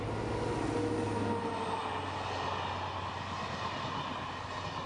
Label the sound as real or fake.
real